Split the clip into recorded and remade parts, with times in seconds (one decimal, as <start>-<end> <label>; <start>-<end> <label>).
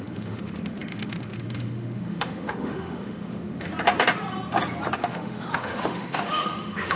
0.0-3.7 remade; 3.7-5.0 recorded; 5.0-7.0 remade